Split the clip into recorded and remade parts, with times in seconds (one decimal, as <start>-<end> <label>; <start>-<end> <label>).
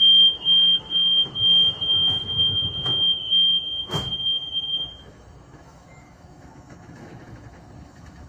0.0-8.3 remade